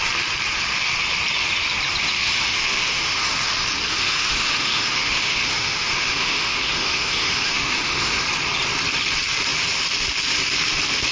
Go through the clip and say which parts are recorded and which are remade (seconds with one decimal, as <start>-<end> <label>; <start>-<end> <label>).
0.0-2.2 recorded; 2.2-3.3 remade; 3.3-3.9 recorded; 3.9-8.2 remade; 8.2-11.1 recorded